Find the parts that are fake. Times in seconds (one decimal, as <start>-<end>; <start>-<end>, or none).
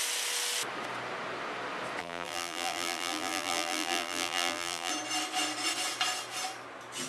2.0-4.9